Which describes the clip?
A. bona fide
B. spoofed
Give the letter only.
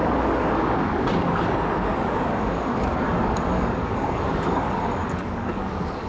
B